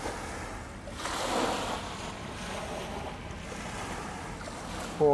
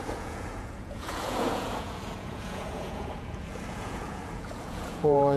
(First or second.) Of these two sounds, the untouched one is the first